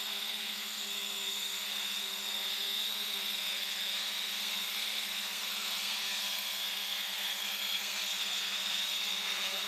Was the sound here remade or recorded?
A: remade